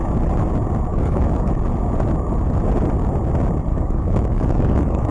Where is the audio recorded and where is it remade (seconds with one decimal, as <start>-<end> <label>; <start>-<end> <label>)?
0.0-0.9 recorded; 0.9-1.5 remade; 1.5-3.7 recorded; 3.7-5.1 remade